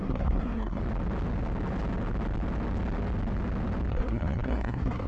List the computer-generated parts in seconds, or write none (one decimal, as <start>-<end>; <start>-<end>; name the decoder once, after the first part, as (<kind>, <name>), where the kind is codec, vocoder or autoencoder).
0.0-0.8 (codec, SNAC); 3.9-5.1